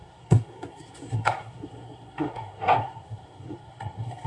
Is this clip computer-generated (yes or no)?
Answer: yes